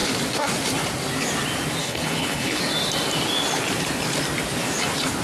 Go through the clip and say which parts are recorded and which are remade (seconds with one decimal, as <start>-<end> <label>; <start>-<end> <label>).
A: 0.0-1.8 recorded; 1.8-2.6 remade; 2.6-5.2 recorded